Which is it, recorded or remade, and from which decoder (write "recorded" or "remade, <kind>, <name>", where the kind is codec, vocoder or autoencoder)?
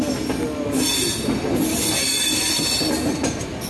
recorded